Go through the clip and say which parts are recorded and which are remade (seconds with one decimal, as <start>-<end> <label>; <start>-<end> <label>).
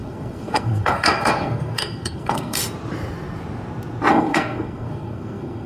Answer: 0.0-2.6 remade; 2.6-4.1 recorded; 4.1-5.7 remade